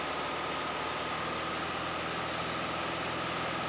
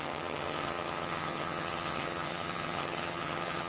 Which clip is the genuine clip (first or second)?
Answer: first